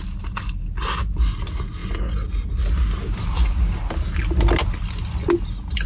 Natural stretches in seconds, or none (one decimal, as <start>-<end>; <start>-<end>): 0.0-5.9